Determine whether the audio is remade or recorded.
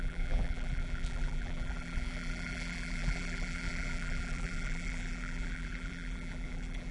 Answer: remade